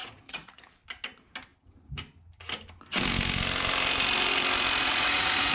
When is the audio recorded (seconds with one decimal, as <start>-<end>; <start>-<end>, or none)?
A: 0.6-4.8